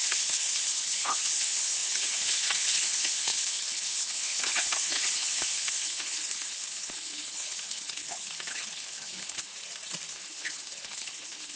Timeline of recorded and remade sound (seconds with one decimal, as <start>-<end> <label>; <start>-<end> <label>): 0.0-9.5 remade; 9.5-10.1 recorded; 10.1-11.6 remade